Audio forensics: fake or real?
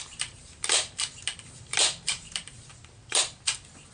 fake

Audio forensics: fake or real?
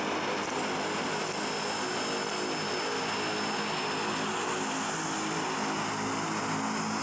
real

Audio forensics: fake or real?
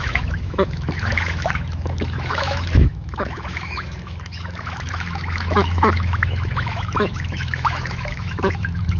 fake